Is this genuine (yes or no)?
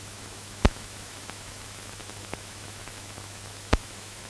no